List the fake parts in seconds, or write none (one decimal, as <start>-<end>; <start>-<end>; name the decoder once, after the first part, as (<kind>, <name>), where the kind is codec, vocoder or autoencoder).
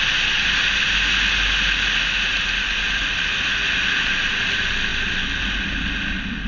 none